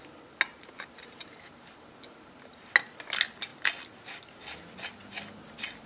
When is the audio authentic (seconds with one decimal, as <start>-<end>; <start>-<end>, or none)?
0.0-5.9